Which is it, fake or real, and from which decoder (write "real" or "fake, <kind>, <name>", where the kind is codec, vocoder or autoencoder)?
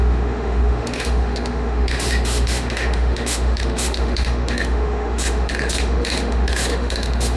fake, autoencoder, DAC-VAE